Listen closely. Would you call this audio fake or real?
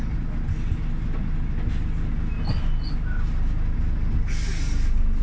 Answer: real